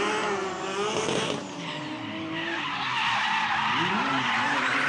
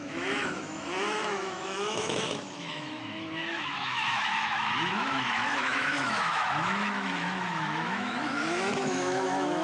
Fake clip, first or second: second